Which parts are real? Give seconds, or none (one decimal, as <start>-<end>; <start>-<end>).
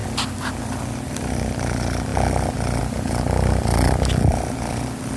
2.1-2.8